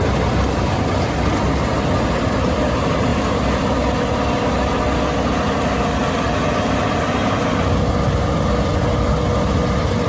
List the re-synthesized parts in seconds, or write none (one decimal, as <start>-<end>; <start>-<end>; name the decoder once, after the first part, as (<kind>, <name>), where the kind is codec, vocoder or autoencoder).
none